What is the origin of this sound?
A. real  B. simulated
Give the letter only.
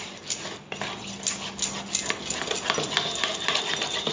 A